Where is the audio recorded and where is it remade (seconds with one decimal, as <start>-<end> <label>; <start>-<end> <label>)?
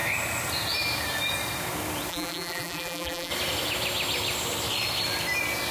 0.0-2.1 recorded; 2.1-3.3 remade; 3.3-5.7 recorded